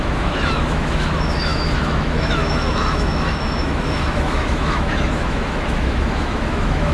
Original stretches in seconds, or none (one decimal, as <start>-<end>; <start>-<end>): none